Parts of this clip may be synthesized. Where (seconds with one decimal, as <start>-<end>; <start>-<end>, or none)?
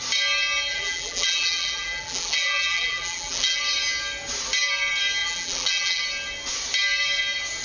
0.7-3.6; 5.2-6.0